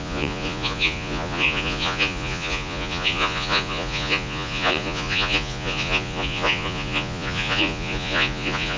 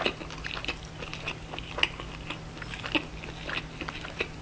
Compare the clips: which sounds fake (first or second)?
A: first